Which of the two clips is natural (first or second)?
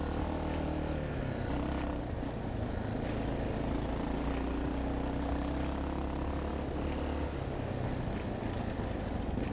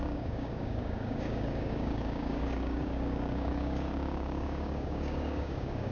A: first